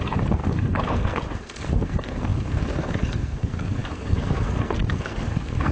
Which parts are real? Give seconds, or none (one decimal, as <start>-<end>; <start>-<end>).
none